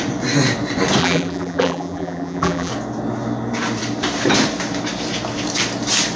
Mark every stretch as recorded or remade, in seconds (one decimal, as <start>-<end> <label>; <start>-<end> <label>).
0.0-1.0 recorded; 1.0-2.7 remade; 2.7-6.2 recorded

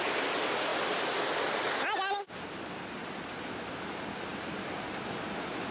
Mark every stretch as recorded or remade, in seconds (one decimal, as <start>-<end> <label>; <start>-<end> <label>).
0.0-5.7 recorded

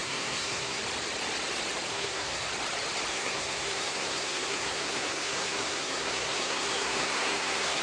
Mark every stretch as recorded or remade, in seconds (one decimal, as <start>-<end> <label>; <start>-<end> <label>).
0.0-0.8 remade; 0.8-1.9 recorded; 1.9-2.5 remade; 2.5-3.1 recorded; 3.1-7.8 remade

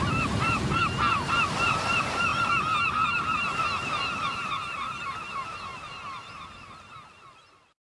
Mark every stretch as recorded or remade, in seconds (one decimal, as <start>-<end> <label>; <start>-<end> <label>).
0.0-7.8 recorded

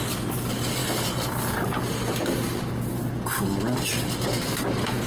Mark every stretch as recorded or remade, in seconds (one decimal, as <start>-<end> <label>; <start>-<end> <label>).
0.0-5.1 recorded

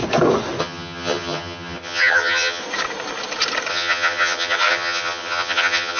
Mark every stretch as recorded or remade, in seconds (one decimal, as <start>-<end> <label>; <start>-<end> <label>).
0.0-0.6 recorded; 0.6-2.6 remade; 2.6-3.7 recorded; 3.7-6.0 remade

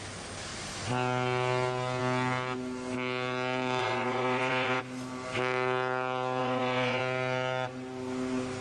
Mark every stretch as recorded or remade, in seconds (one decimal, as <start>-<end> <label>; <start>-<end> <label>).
0.0-3.8 recorded; 3.8-4.8 remade; 4.8-6.4 recorded; 6.4-7.0 remade; 7.0-8.6 recorded

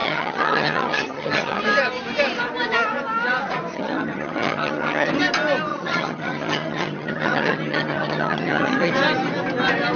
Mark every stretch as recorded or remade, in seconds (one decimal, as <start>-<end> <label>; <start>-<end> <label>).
0.0-1.6 remade; 1.6-3.7 recorded; 3.7-5.1 remade; 5.1-5.7 recorded; 5.7-8.9 remade; 8.9-10.0 recorded